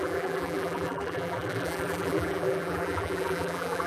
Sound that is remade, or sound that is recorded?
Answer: remade